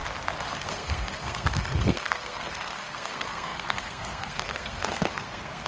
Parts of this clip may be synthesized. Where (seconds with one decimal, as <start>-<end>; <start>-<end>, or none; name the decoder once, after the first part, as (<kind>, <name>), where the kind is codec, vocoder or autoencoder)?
0.6-5.7 (codec, SNAC)